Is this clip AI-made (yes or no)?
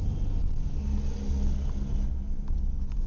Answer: no